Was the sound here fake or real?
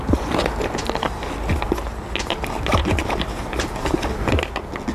real